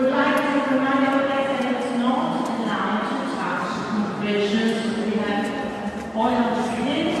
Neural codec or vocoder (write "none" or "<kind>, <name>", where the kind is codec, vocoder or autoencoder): none